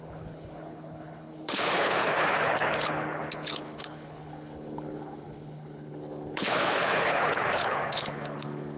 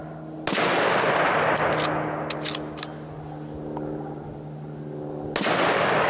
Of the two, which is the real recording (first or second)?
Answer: second